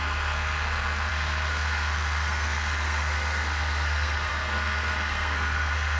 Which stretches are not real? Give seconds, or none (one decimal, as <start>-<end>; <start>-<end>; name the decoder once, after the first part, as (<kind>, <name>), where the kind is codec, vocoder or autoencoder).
0.0-6.0 (codec, SNAC)